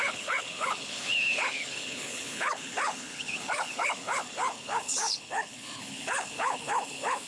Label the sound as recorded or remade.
remade